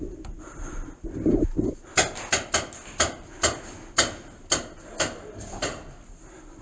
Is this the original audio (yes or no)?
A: yes